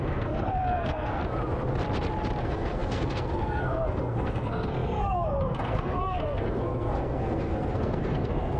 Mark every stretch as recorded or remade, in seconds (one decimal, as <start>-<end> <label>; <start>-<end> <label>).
0.0-1.2 remade; 1.2-2.4 recorded; 2.4-8.6 remade